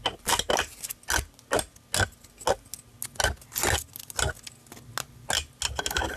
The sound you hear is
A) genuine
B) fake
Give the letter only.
A